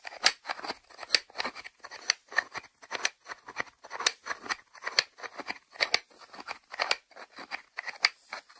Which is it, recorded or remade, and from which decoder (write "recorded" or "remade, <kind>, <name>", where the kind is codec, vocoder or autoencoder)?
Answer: recorded